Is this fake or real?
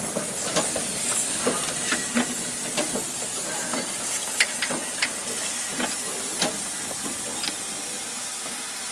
real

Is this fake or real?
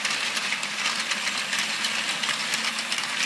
real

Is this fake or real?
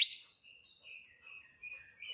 real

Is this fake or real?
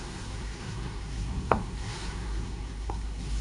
fake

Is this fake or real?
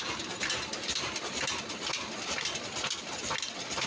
real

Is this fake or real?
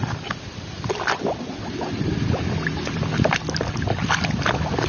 real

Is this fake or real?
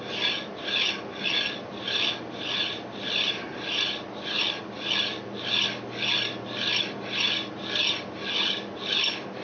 real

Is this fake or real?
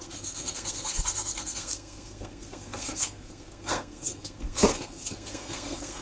fake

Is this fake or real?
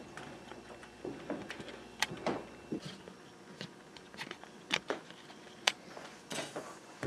fake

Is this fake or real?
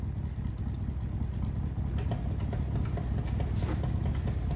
real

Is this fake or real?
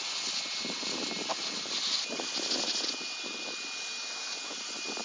real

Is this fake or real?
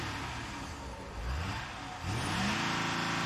real